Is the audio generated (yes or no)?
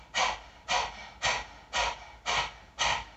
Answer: no